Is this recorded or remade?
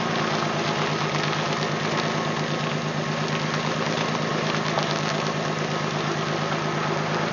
recorded